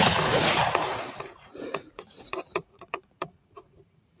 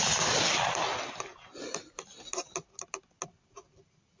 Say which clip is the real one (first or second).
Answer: second